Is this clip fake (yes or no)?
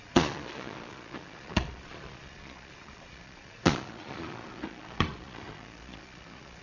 yes